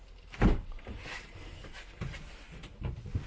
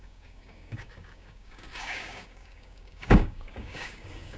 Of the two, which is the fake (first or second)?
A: second